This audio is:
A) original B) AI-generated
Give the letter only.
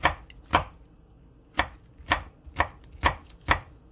A